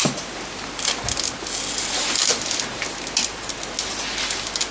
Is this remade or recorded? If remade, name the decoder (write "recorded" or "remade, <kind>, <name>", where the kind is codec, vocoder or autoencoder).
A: recorded